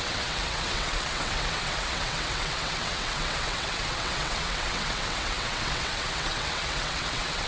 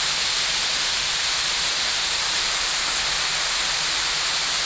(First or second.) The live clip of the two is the second